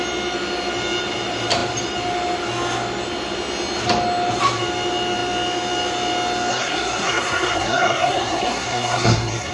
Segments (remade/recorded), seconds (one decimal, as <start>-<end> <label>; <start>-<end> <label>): 0.0-6.5 recorded; 6.5-9.5 remade

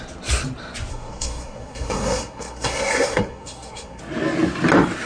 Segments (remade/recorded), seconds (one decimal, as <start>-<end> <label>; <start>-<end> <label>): 0.0-0.9 recorded; 0.9-4.0 remade; 4.0-5.1 recorded